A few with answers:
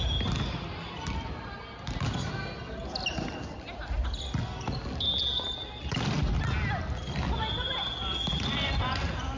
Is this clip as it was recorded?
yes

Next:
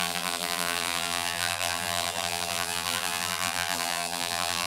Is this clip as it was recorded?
no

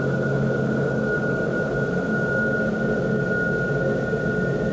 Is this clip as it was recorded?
yes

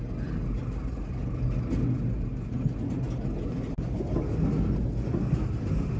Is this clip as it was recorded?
yes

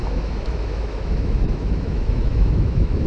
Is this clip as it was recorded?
no